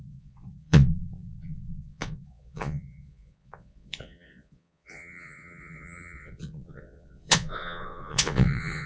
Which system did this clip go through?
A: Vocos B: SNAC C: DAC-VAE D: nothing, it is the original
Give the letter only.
A